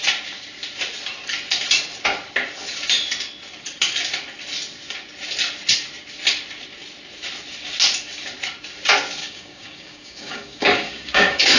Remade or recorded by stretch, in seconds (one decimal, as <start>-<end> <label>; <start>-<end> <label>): 0.0-9.2 recorded; 9.2-11.6 remade